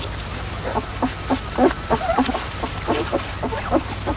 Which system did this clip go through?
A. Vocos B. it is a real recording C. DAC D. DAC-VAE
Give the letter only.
B